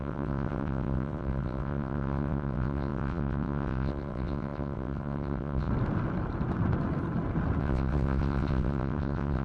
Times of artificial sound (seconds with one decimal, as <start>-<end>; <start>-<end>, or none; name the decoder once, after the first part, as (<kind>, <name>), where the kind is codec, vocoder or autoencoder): 0.0-5.7 (vocoder, WaveNeXt); 7.6-9.4